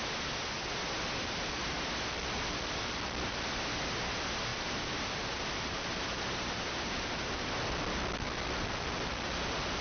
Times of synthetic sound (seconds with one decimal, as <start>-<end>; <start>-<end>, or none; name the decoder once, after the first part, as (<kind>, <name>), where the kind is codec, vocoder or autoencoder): 4.5-7.5 (vocoder, BigVGAN v2)